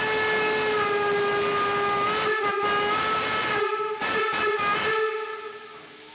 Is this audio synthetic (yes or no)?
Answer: no